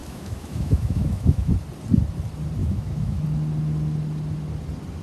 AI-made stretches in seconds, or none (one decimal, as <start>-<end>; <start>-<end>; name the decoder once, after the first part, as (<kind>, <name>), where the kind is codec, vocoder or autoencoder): 0.0-1.5 (autoencoder, DAC-VAE); 2.6-3.2